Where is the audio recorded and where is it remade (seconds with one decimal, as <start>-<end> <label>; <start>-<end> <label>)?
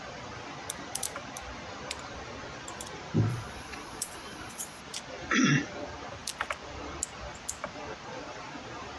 0.0-3.3 recorded; 3.3-4.8 remade; 4.8-9.0 recorded